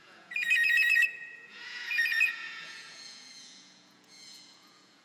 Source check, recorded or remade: remade